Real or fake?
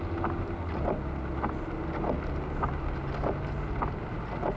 real